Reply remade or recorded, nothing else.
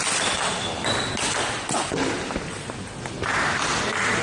recorded